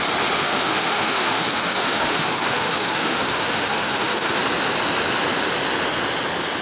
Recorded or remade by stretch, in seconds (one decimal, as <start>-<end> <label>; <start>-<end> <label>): 0.0-0.4 recorded; 0.4-4.4 remade; 4.4-6.6 recorded